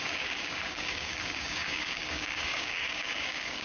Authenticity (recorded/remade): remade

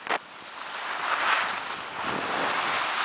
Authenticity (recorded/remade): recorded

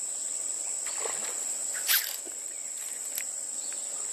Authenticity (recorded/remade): recorded